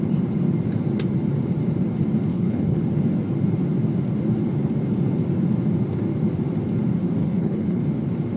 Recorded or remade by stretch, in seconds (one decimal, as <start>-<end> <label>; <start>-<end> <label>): 0.0-2.3 recorded; 2.3-2.8 remade; 2.8-7.2 recorded; 7.2-7.8 remade; 7.8-8.4 recorded